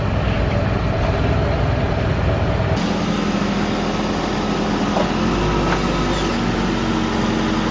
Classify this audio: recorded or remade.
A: recorded